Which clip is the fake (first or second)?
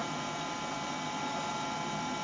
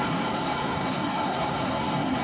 second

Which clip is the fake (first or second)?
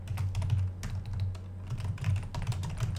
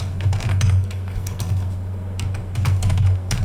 second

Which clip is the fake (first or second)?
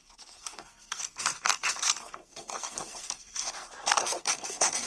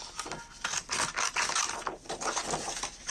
first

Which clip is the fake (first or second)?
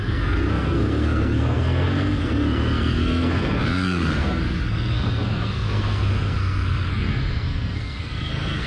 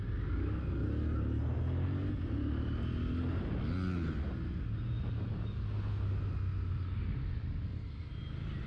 first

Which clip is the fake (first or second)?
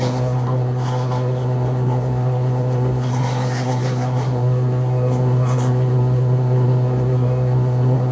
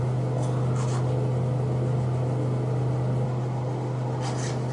first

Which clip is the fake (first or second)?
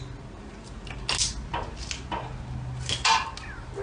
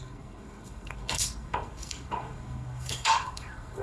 second